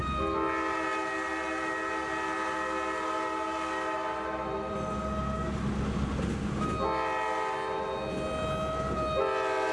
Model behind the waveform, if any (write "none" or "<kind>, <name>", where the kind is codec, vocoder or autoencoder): none